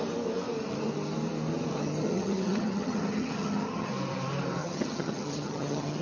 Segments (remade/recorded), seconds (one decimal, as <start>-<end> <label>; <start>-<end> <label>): 0.0-1.7 recorded; 1.7-3.9 remade; 3.9-4.6 recorded; 4.6-6.0 remade